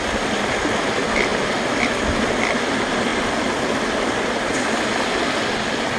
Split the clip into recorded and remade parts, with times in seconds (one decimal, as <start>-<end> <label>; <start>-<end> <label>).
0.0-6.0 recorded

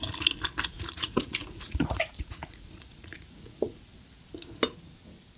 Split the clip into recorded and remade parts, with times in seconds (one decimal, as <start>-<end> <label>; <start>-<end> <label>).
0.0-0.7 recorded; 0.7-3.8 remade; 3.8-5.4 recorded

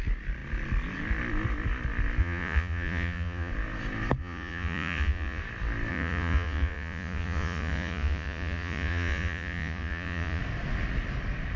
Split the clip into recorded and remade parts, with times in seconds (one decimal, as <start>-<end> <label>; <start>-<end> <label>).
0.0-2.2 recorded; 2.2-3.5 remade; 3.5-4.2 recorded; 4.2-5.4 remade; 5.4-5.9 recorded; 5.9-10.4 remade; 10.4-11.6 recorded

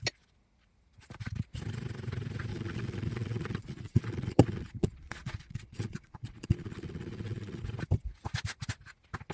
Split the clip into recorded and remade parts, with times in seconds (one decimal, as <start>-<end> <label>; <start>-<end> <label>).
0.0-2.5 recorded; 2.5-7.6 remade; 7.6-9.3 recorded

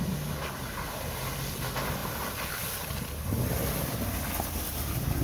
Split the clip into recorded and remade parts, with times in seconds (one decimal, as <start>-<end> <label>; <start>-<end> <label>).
0.0-5.2 recorded

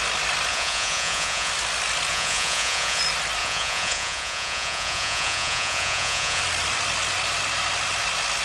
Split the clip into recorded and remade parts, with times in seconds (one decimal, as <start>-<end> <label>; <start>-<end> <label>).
0.0-0.5 recorded; 0.5-1.5 remade; 1.5-2.1 recorded; 2.1-3.0 remade; 3.0-3.4 recorded; 3.4-6.4 remade; 6.4-8.4 recorded

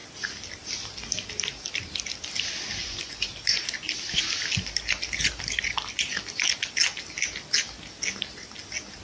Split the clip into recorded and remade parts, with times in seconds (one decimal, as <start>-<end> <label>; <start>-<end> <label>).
0.0-2.8 recorded; 2.8-3.3 remade; 3.3-9.0 recorded